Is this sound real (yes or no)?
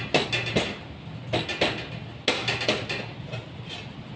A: yes